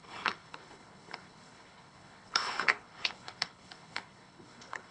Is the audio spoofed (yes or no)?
yes